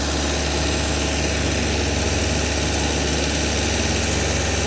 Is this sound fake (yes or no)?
no